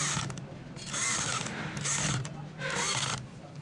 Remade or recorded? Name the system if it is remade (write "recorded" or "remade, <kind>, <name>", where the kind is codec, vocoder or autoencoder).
recorded